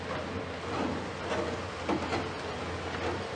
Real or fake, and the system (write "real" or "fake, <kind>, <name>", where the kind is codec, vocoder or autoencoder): real